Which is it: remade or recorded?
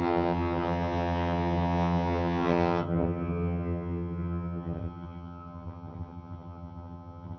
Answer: remade